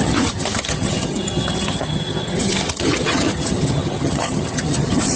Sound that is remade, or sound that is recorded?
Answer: remade